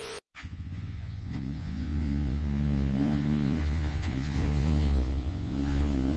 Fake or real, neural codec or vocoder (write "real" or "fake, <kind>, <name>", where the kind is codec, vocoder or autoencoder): fake, vocoder, Vocos